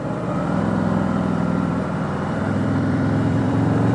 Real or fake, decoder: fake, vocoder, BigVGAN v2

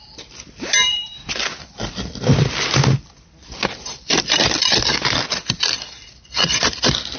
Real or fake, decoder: fake, vocoder, BigVGAN v2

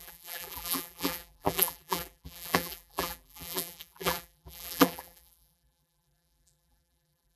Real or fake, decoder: fake, vocoder, BigVGAN v2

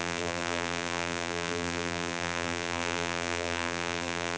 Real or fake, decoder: fake, vocoder, BigVGAN v2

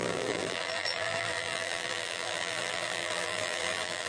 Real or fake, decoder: fake, vocoder, BigVGAN v2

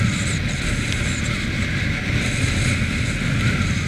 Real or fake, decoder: real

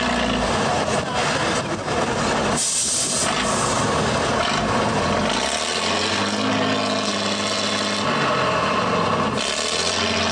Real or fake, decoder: real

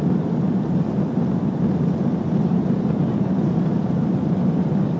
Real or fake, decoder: fake, vocoder, BigVGAN v2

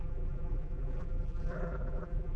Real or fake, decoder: fake, vocoder, BigVGAN v2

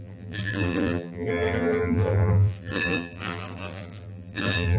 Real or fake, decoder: fake, vocoder, BigVGAN v2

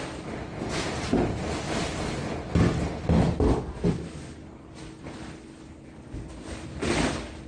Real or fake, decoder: real